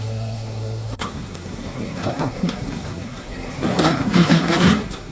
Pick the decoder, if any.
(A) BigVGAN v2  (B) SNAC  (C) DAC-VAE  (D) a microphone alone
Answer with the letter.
B